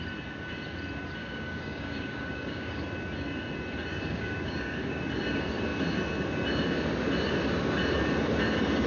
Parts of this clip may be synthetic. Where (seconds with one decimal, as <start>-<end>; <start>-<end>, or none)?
1.2-2.8; 3.9-5.0